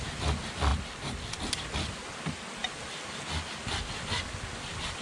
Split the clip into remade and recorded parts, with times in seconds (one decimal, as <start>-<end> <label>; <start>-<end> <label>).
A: 0.0-0.7 recorded; 0.7-1.5 remade; 1.5-5.0 recorded

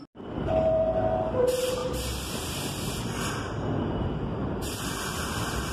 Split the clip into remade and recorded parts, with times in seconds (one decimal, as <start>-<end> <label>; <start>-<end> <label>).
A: 0.0-1.8 recorded; 1.8-2.9 remade; 2.9-4.4 recorded; 4.4-5.0 remade; 5.0-5.7 recorded

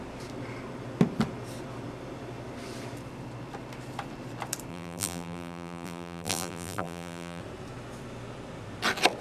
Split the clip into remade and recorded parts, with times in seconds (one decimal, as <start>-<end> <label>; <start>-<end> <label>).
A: 0.0-4.7 recorded; 4.7-7.4 remade; 7.4-9.2 recorded

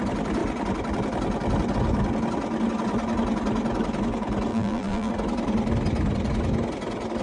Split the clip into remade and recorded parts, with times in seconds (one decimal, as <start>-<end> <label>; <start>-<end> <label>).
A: 0.0-4.5 recorded; 4.5-5.1 remade; 5.1-7.2 recorded

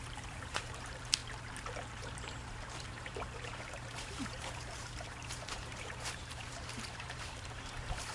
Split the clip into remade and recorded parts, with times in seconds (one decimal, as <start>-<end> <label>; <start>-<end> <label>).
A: 0.0-1.2 remade; 1.2-1.8 recorded; 1.8-8.1 remade